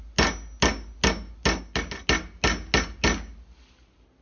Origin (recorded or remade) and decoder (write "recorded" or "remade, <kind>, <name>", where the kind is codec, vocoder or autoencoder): recorded